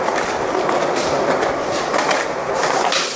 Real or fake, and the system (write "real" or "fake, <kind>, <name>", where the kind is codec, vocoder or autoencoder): real